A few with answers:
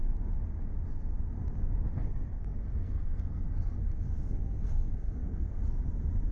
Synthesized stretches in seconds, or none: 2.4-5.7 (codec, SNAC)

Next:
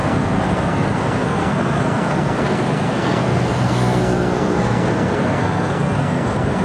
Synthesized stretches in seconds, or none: 0.0-6.6 (codec, SNAC)